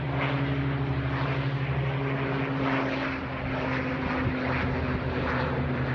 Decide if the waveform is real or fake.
real